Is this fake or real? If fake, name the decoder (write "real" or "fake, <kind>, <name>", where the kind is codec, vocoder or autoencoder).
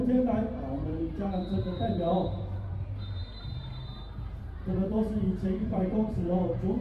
fake, vocoder, BigVGAN v2